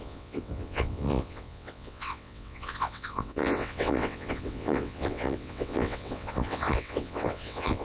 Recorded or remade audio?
remade